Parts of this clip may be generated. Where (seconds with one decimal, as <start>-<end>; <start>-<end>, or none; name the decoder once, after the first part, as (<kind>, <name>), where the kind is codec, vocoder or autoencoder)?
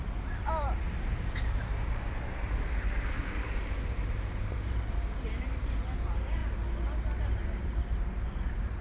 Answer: 0.0-6.4 (vocoder, BigVGAN v2); 7.2-8.8